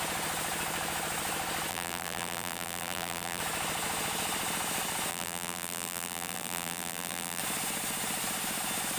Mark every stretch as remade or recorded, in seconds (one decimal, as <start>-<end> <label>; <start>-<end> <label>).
0.0-1.7 recorded; 1.7-3.4 remade; 3.4-5.1 recorded; 5.1-7.4 remade; 7.4-9.0 recorded